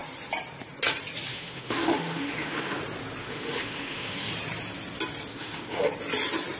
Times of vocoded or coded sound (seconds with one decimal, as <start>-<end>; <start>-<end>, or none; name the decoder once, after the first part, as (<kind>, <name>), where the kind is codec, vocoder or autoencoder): 1.3-2.8 (autoencoder, DAC-VAE); 3.2-4.3; 5.3-5.9